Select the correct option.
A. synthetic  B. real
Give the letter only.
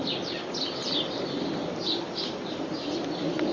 B